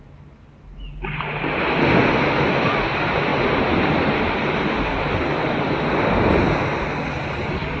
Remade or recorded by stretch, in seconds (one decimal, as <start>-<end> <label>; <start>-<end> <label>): 0.0-3.3 recorded; 3.3-5.6 remade; 5.6-7.8 recorded